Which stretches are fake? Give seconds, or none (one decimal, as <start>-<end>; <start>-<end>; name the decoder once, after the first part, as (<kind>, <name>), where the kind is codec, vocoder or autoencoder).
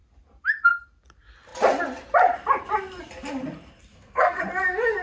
3.9-4.4 (codec, SNAC)